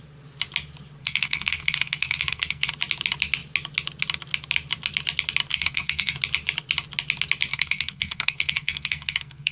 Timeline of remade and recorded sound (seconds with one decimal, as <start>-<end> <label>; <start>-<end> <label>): 0.0-1.0 recorded; 1.0-2.7 remade; 2.7-5.5 recorded; 5.5-6.2 remade; 6.2-7.5 recorded; 7.5-9.5 remade